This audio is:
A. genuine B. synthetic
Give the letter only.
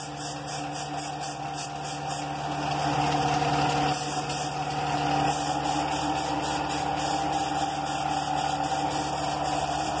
A